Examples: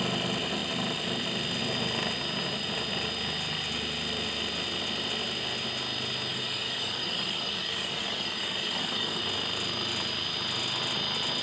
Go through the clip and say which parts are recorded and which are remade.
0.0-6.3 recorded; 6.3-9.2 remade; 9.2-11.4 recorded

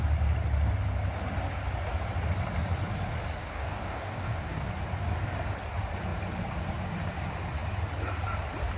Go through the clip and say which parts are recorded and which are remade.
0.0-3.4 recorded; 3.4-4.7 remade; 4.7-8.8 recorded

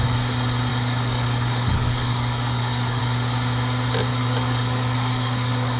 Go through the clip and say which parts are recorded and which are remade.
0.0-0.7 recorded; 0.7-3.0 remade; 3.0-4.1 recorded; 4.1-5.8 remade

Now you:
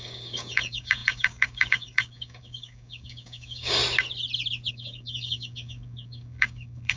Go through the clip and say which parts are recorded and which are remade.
0.0-3.8 remade; 3.8-4.7 recorded; 4.7-7.0 remade